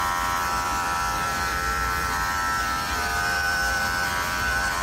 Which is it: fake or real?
fake